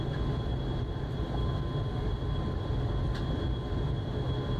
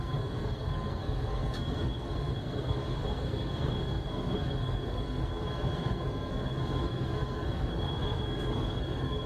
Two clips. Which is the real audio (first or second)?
first